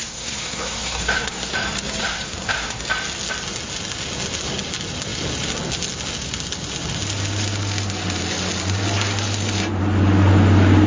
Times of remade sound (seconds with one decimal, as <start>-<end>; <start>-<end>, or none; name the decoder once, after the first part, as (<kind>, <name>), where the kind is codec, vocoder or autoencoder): 0.0-1.5 (codec, SNAC); 2.0-2.8